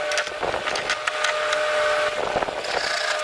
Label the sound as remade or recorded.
recorded